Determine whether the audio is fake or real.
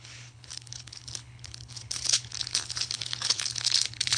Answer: fake